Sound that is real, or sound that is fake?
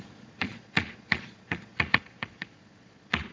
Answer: fake